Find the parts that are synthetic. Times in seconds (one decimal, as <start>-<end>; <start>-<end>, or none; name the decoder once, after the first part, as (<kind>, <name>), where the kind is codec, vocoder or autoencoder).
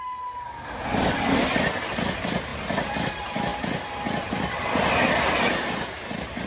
0.0-6.5 (vocoder, BigVGAN v2)